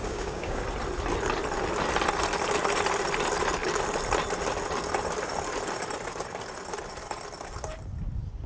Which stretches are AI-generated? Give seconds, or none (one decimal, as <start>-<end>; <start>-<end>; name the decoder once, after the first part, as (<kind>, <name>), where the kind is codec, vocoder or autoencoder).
0.0-0.6 (codec, DAC)